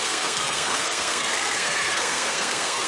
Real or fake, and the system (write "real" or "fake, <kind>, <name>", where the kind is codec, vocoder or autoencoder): fake, codec, SNAC